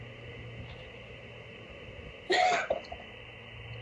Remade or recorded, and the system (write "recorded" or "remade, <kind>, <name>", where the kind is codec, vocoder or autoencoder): recorded